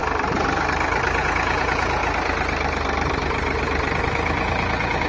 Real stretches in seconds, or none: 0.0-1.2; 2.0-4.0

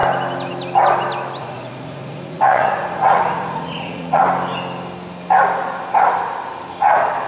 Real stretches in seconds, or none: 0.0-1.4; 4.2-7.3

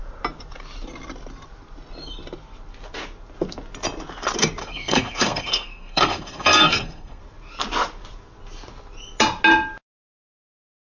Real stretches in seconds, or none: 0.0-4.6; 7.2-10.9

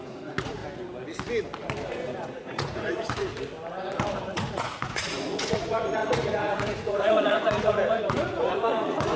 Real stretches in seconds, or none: 0.6-1.9; 3.3-4.2

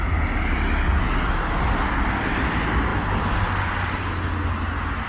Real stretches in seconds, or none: 0.0-5.1

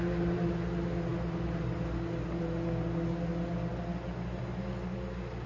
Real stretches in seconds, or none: 0.0-5.5

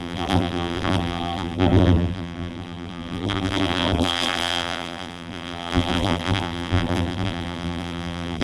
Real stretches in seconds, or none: none